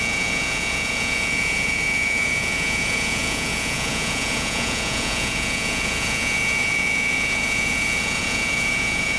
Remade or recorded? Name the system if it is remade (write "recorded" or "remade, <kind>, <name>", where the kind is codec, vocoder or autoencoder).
remade, vocoder, Vocos